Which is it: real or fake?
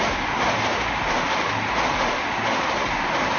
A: real